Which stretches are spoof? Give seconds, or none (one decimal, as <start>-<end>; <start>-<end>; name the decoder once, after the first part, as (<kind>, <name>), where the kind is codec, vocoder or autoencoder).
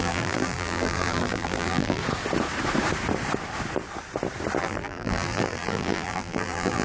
0.0-2.0 (vocoder, BigVGAN v2); 4.6-6.8